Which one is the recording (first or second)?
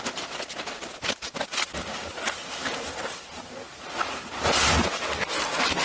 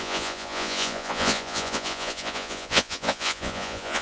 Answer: first